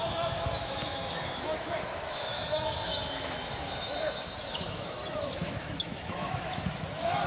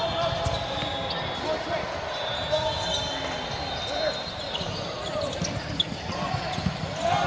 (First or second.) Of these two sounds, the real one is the second